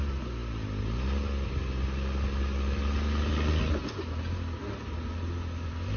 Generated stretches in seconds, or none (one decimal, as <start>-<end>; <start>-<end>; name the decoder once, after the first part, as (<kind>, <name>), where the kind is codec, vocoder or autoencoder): none

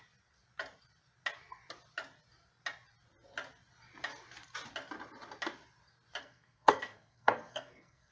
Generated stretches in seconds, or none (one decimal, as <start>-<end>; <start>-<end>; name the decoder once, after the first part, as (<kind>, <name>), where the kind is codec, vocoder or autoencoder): 6.2-8.1 (codec, SNAC)

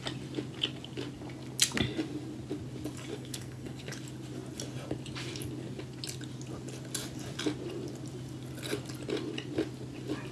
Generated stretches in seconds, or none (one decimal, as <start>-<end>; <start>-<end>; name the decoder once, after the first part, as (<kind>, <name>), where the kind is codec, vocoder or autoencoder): 3.1-3.9 (codec, SNAC)

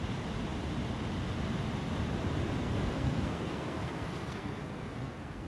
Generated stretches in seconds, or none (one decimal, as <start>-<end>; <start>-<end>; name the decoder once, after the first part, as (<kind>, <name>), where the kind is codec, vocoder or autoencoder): 2.6-5.5 (codec, SNAC)

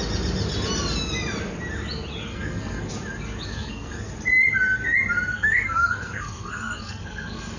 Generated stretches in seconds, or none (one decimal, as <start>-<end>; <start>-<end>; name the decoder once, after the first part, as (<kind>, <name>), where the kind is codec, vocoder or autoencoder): 2.3-2.9 (codec, SNAC); 3.5-4.1; 5.3-7.6

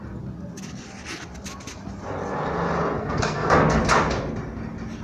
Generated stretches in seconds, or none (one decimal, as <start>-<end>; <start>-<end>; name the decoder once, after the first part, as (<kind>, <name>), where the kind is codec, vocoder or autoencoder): 3.0-3.8 (codec, SNAC)